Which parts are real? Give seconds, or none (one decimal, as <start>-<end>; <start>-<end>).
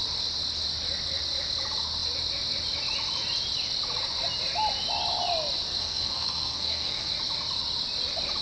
0.0-5.8; 7.1-8.4